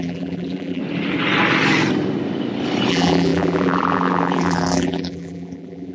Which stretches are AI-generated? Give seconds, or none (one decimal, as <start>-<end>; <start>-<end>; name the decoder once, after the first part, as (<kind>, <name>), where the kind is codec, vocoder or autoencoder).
0.0-0.8 (vocoder, BigVGAN v2); 2.9-5.9